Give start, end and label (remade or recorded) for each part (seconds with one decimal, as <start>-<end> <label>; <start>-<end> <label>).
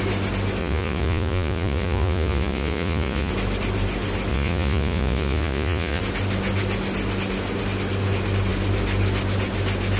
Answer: 0.0-0.6 recorded; 0.6-3.3 remade; 3.3-4.3 recorded; 4.3-6.0 remade; 6.0-10.0 recorded